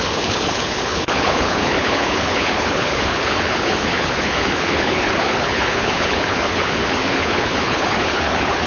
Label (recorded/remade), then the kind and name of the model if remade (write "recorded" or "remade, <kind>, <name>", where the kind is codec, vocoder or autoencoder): remade, codec, HILCodec